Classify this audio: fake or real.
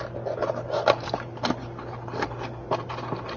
real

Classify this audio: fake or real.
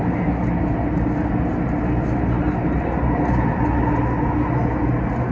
real